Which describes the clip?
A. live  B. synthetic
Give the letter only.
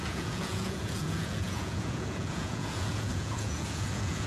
B